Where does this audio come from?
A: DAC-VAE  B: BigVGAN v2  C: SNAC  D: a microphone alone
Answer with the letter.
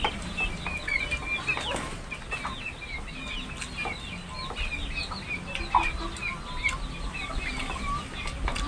D